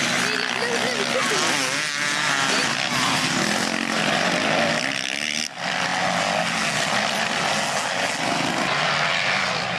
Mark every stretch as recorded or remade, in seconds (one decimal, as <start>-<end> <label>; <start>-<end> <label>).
0.0-9.8 recorded